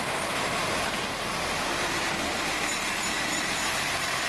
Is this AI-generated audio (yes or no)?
no